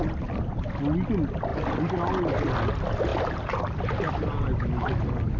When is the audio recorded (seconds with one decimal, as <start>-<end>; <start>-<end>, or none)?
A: 0.0-3.1; 4.1-5.4